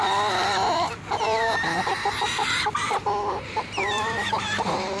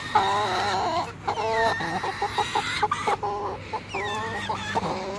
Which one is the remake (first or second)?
first